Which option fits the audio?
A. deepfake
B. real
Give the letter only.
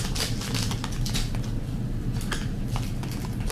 B